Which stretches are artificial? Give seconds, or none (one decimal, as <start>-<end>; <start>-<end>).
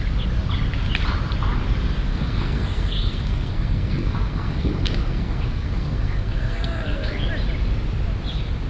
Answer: 2.1-7.3